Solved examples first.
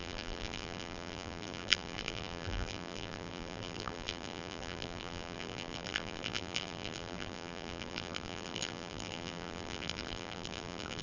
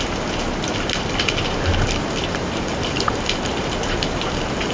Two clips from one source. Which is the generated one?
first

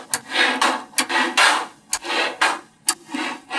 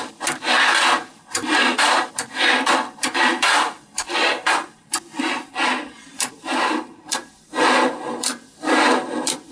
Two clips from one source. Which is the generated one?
second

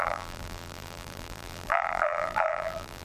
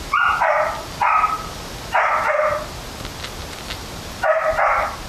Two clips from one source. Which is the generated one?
first